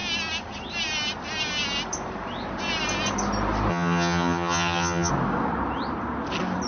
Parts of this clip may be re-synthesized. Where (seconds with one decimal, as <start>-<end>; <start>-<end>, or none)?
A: 3.7-5.1